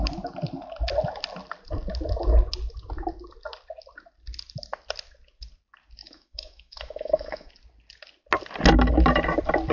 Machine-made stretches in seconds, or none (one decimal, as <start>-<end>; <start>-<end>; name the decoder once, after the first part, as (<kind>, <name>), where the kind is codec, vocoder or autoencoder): 6.0-7.5 (autoencoder, DAC-VAE)